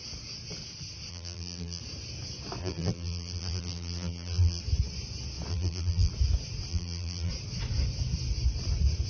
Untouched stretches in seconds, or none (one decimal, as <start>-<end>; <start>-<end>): 0.0-1.1; 1.8-2.6; 4.6-5.5; 6.1-6.7; 7.3-9.1